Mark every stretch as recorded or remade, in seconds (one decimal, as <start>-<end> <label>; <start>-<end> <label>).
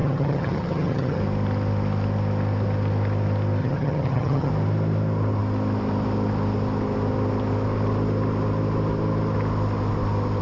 0.0-1.2 remade; 1.2-3.6 recorded; 3.6-4.5 remade; 4.5-10.4 recorded